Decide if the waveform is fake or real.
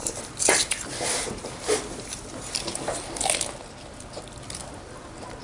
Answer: real